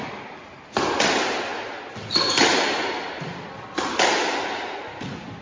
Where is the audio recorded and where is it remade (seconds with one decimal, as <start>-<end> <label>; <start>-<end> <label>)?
0.0-5.4 recorded